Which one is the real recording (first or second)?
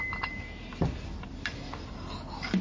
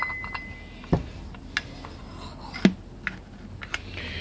second